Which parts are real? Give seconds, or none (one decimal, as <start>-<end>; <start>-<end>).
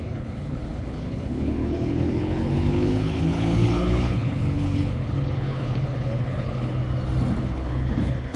6.8-7.4